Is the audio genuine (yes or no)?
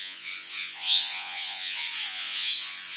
no